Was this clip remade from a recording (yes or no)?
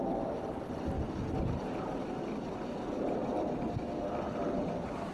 no